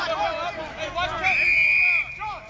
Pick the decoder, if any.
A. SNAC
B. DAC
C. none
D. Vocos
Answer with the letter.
C